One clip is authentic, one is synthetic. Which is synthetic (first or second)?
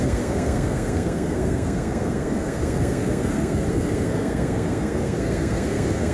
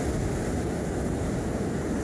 first